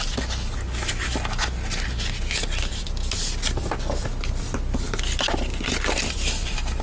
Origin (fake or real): real